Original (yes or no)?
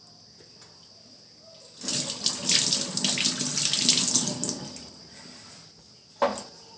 yes